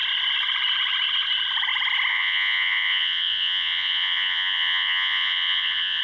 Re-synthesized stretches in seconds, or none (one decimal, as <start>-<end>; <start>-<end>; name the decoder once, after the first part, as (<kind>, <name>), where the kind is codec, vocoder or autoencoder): 2.1-6.0 (vocoder, Vocos)